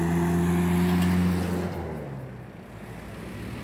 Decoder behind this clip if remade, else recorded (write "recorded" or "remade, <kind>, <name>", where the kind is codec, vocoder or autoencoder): recorded